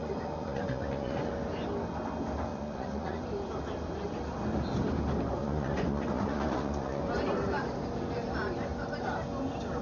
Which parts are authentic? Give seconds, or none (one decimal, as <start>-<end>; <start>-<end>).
1.3-2.5; 3.2-5.4; 7.0-9.8